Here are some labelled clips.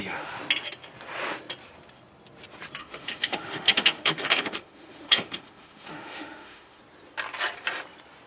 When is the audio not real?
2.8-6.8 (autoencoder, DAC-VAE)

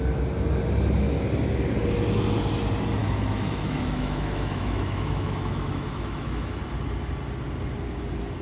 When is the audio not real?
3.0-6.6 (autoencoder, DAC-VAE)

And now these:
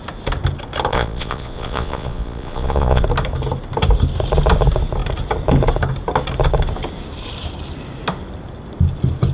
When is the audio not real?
0.9-3.0 (vocoder, Vocos)